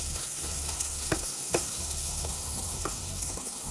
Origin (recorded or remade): remade